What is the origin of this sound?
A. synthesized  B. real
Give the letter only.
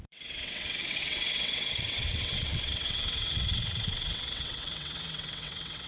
A